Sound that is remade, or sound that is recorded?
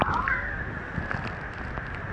remade